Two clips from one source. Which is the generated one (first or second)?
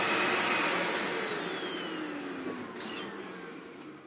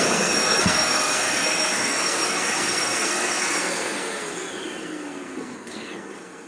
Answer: second